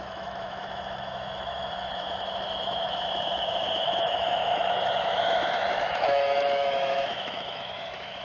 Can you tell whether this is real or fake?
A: fake